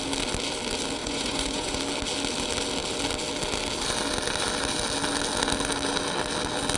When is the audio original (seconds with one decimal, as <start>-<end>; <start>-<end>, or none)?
0.0-1.0; 1.8-6.8